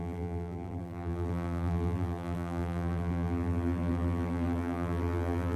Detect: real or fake fake